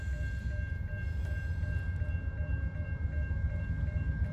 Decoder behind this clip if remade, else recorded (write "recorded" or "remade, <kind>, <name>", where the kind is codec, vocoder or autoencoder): recorded